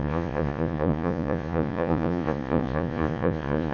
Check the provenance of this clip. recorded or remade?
remade